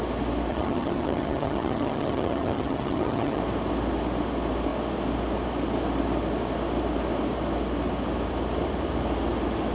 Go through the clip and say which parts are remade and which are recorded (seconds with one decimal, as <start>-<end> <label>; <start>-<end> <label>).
0.0-0.5 recorded; 0.5-3.4 remade; 3.4-9.7 recorded